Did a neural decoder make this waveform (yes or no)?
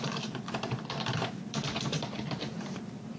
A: yes